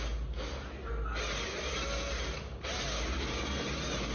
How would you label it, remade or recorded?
recorded